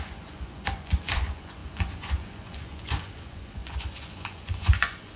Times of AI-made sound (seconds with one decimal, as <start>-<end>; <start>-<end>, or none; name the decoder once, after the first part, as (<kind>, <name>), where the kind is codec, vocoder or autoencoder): 0.0-5.2 (vocoder, Vocos)